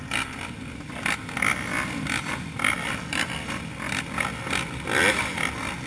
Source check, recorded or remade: recorded